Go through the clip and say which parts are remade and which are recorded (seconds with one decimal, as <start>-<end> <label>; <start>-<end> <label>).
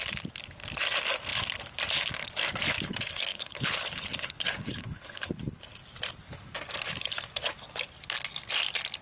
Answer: 0.0-3.3 recorded; 3.3-5.6 remade; 5.6-9.0 recorded